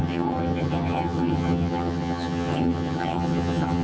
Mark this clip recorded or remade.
remade